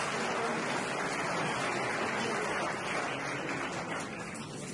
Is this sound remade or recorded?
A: recorded